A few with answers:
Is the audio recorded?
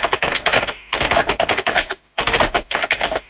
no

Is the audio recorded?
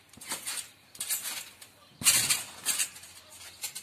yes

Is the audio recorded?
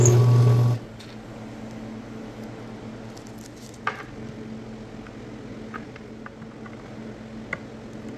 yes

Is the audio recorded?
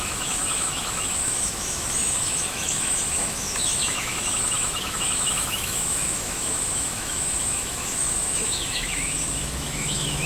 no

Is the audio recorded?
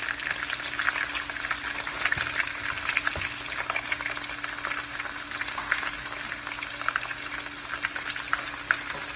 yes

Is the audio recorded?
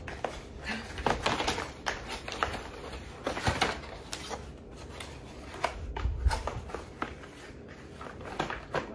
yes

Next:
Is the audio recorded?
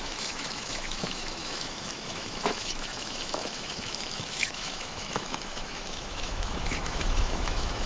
no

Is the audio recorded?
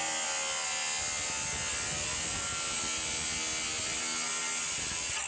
yes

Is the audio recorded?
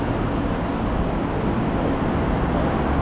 yes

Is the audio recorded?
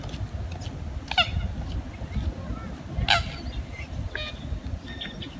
yes